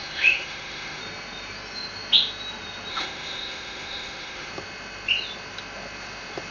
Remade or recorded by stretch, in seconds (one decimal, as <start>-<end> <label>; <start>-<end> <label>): 0.0-1.0 remade; 1.0-2.9 recorded; 2.9-4.5 remade; 4.5-6.5 recorded